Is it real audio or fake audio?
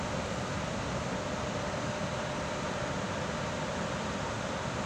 real